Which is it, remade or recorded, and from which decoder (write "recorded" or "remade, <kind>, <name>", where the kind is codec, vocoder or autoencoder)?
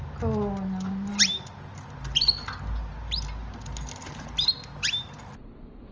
recorded